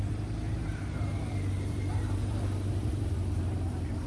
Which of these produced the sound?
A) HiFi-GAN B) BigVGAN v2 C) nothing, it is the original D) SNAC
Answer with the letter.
B